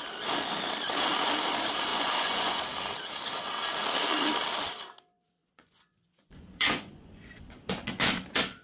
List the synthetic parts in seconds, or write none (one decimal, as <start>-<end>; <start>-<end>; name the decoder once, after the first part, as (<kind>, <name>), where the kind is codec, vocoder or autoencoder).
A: 1.9-2.6 (vocoder, Vocos); 5.4-8.1